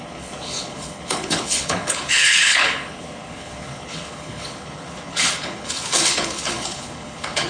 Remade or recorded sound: remade